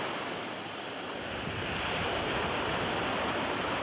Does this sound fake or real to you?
real